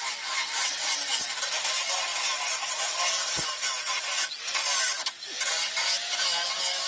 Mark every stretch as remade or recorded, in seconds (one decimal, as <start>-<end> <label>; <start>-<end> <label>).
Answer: 0.0-6.9 recorded